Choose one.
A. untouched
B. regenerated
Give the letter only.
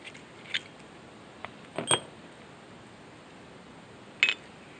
A